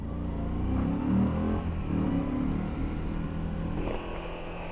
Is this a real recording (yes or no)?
yes